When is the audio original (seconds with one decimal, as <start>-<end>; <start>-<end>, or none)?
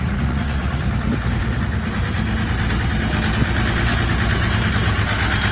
0.8-5.5